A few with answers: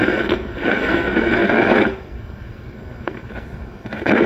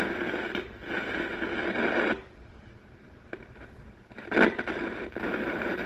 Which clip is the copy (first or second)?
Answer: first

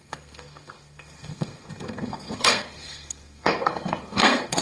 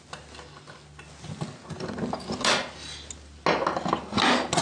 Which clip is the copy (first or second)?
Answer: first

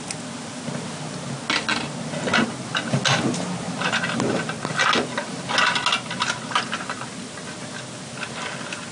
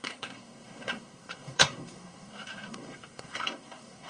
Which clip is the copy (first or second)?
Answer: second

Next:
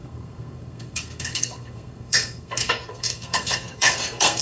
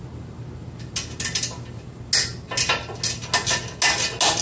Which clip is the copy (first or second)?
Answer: first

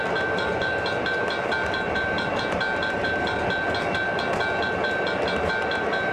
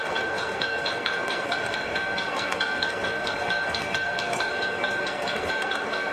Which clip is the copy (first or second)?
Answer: second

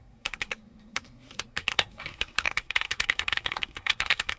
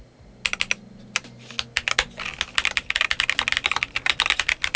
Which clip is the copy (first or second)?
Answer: first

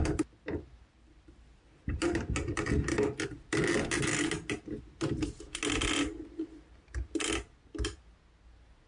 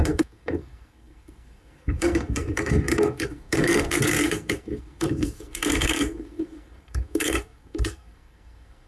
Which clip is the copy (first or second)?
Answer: second